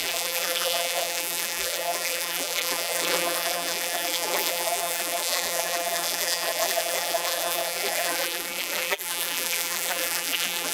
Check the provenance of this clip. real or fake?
fake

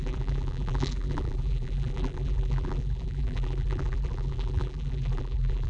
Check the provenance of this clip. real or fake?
fake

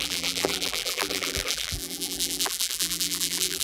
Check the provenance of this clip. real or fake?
fake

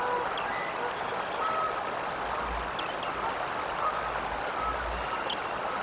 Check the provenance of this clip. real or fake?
real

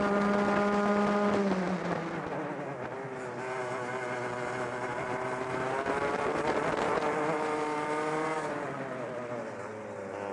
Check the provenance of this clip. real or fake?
real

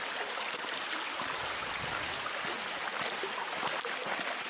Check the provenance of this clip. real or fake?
real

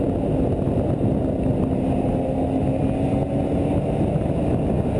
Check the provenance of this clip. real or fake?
real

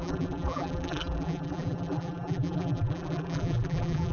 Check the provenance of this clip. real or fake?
fake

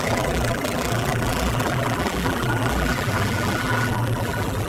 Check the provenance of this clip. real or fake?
fake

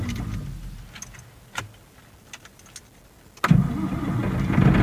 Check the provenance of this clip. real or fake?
real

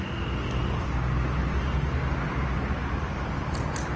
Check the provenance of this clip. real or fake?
real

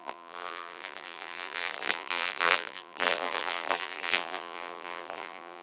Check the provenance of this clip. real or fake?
fake